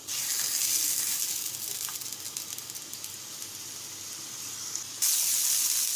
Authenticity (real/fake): real